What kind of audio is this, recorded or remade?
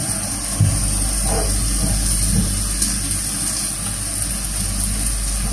recorded